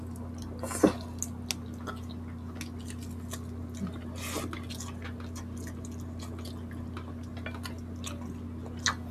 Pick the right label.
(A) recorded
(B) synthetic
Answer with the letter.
A